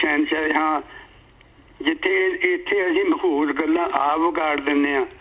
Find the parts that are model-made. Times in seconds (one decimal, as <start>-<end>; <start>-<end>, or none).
2.2-4.1